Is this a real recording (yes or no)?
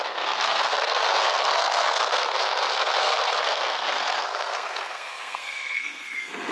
no